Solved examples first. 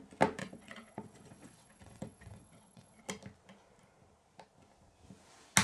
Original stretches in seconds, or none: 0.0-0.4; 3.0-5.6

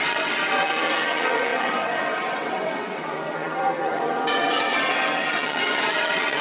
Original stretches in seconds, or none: none

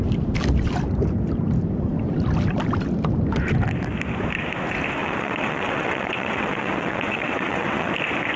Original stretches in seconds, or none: 0.0-5.0; 7.9-8.4